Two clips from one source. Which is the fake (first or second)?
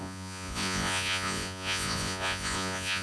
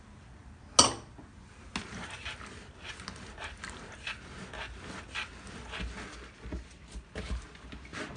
first